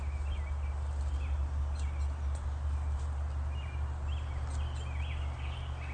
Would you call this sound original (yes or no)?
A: yes